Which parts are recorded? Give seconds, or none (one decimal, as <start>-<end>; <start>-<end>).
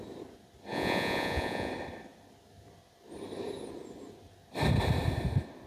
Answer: 0.0-0.7; 1.7-5.7